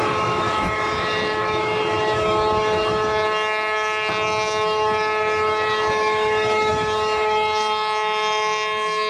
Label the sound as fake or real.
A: fake